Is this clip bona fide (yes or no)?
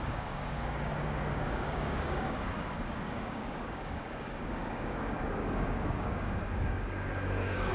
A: no